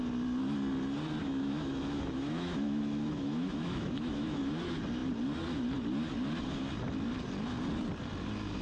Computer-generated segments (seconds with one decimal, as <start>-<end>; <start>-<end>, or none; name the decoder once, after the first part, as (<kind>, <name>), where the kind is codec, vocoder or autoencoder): 1.2-4.4 (autoencoder, DAC-VAE)